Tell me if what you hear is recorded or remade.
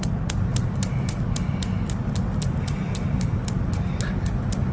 recorded